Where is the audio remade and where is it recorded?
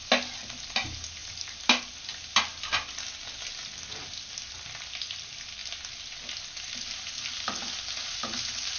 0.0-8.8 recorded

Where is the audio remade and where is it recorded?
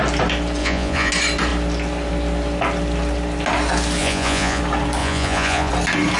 0.0-0.6 recorded; 0.6-1.1 remade; 1.1-4.0 recorded; 4.0-4.6 remade; 4.6-5.0 recorded; 5.0-5.7 remade; 5.7-6.2 recorded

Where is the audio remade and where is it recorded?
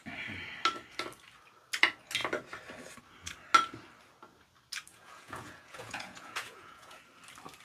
0.0-4.9 recorded; 4.9-7.0 remade; 7.0-7.6 recorded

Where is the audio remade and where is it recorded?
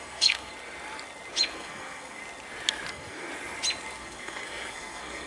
0.0-0.5 remade; 0.5-1.5 recorded; 1.5-2.2 remade; 2.2-2.9 recorded; 2.9-3.3 remade; 3.3-4.0 recorded; 4.0-5.3 remade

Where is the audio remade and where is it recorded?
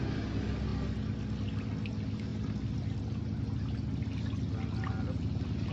0.0-5.7 recorded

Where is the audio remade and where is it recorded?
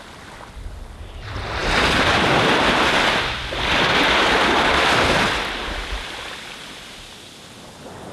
0.0-8.1 recorded